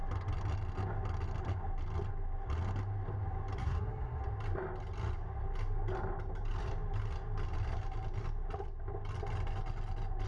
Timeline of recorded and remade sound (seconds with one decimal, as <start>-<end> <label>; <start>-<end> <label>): 0.0-3.6 recorded; 3.6-4.2 remade; 4.2-10.3 recorded